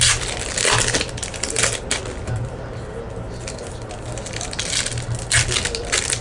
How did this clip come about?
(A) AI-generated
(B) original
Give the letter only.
B